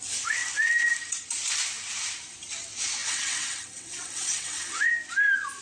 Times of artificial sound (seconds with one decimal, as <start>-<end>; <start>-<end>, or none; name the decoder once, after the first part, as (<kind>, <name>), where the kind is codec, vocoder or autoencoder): 3.0-4.9 (vocoder, WaveNeXt)